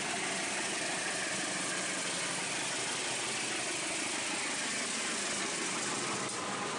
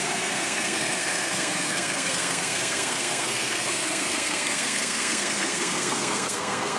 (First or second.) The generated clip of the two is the second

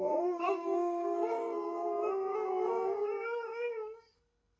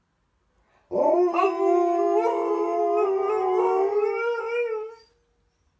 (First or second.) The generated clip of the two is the first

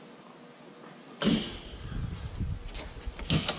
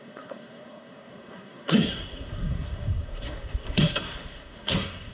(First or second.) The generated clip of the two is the second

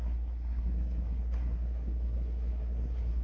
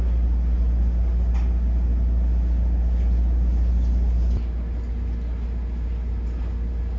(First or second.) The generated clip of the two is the first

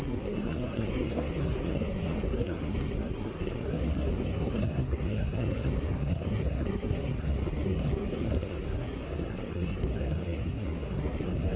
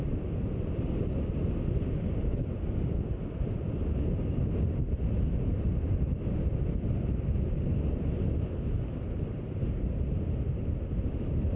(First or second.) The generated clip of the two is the first